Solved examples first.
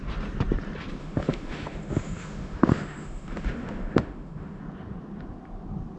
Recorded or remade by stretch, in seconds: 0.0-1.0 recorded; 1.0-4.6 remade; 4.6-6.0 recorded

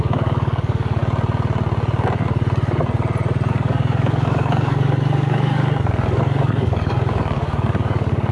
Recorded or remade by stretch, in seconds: 0.0-1.0 remade; 1.0-3.5 recorded; 3.5-8.3 remade